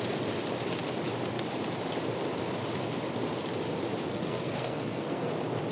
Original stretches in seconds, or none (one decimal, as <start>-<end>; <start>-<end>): 0.0-4.1; 5.3-5.7